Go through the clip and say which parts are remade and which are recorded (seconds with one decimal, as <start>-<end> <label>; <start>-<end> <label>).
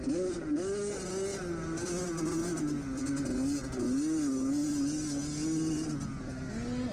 0.0-6.9 recorded